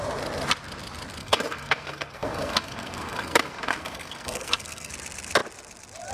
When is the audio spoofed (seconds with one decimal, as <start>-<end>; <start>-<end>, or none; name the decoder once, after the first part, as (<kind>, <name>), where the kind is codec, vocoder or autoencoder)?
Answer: 1.2-4.9 (codec, SNAC)